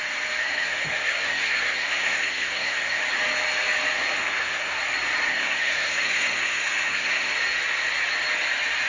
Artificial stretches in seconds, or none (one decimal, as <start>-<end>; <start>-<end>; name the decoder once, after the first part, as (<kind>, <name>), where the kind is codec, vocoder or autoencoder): 0.4-3.0 (codec, SNAC); 4.2-4.8; 5.3-7.3